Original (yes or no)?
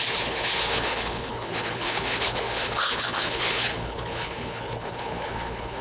no